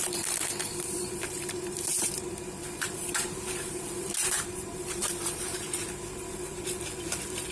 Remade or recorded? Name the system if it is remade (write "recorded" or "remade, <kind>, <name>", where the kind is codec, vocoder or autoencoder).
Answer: remade, vocoder, BigVGAN v2